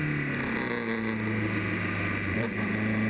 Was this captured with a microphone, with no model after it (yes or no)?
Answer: yes